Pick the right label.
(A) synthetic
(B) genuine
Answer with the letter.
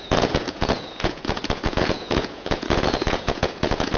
A